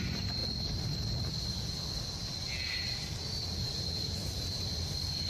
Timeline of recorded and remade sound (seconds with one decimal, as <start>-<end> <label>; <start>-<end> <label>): 0.0-0.4 remade; 0.4-3.4 recorded; 3.4-5.3 remade